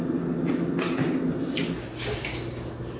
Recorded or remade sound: recorded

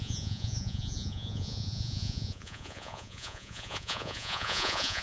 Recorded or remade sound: remade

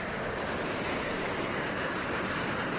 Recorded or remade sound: recorded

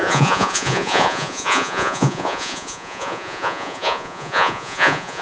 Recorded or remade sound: remade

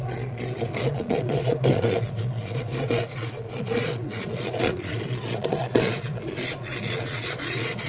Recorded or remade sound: remade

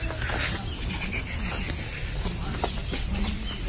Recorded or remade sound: recorded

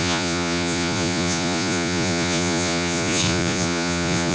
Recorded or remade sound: remade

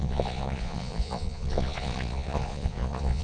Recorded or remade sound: remade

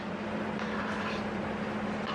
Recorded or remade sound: recorded